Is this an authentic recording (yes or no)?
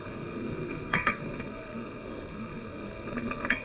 no